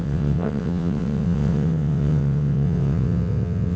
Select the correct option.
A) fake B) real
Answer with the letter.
A